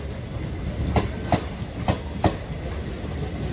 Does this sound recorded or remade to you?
recorded